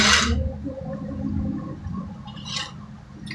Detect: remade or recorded recorded